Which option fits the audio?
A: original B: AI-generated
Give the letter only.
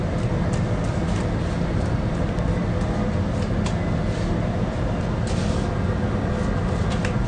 A